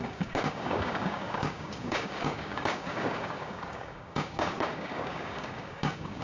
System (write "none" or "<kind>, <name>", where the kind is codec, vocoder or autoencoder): codec, DAC